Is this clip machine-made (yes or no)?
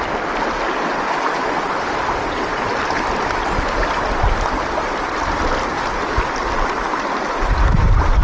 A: no